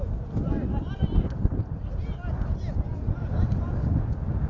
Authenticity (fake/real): real